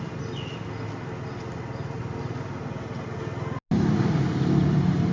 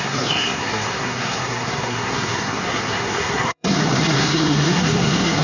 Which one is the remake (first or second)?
second